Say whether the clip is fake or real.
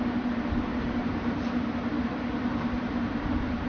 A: fake